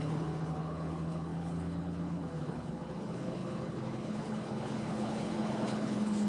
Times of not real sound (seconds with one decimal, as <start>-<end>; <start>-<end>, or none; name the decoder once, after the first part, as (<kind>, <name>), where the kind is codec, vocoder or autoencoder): 0.0-6.3 (codec, HILCodec)